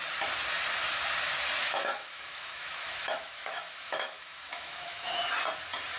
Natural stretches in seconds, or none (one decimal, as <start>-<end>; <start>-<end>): 0.0-1.6; 5.2-6.0